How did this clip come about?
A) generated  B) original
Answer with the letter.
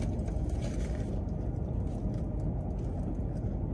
B